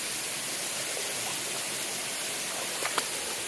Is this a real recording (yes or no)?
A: yes